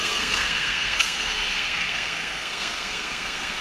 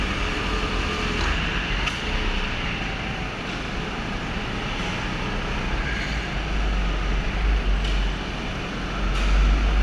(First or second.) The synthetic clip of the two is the first